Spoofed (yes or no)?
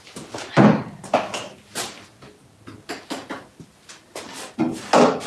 no